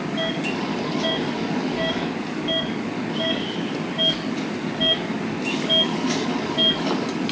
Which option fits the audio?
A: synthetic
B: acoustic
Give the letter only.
A